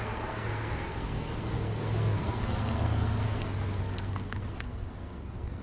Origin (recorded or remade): remade